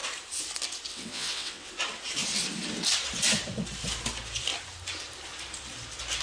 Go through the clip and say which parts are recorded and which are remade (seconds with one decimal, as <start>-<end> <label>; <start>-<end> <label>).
0.0-0.9 recorded; 0.9-1.7 remade; 1.7-6.2 recorded

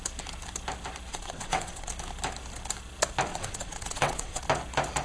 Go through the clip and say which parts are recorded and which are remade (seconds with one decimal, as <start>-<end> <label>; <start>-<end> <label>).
0.0-1.1 recorded; 1.1-1.9 remade; 1.9-3.3 recorded; 3.3-4.4 remade; 4.4-5.0 recorded